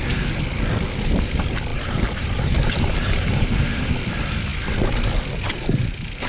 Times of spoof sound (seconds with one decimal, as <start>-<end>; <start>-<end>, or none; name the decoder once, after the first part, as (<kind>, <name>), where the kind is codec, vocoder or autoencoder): 1.7-3.9 (vocoder, BigVGAN v2)